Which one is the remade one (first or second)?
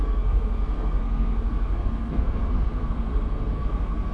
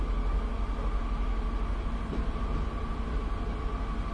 first